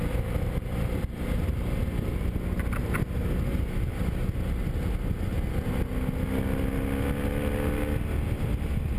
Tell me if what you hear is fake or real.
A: real